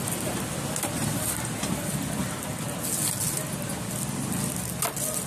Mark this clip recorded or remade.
recorded